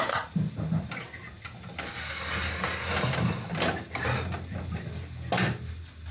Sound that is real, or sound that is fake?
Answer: real